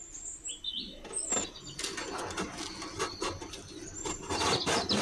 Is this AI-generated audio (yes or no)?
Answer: no